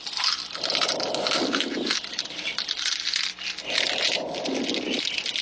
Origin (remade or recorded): recorded